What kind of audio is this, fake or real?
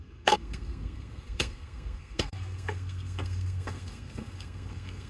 fake